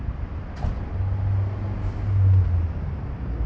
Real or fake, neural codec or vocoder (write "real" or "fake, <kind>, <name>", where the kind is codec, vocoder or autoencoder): real